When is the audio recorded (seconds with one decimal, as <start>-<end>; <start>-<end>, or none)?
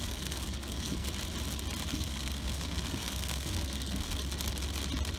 1.1-1.9; 4.2-5.2